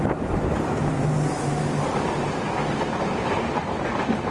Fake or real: real